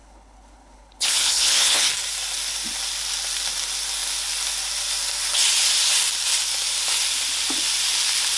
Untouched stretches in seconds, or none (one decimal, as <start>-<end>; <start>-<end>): 1.9-8.4